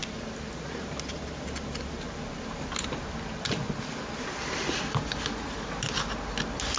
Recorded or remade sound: recorded